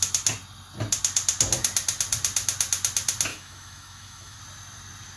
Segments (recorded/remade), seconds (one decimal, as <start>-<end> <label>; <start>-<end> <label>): 0.0-3.3 recorded; 3.3-4.4 remade; 4.4-5.2 recorded